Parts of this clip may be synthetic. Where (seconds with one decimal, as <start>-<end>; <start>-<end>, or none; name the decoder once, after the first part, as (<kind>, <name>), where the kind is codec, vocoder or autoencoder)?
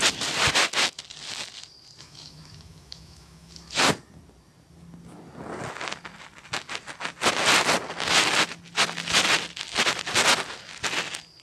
2.0-3.8 (autoencoder, DAC-VAE)